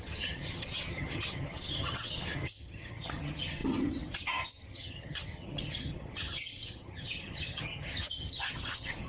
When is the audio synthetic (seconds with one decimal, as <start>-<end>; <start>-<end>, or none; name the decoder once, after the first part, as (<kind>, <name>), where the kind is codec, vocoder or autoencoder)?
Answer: 0.0-9.1 (vocoder, HiFi-GAN)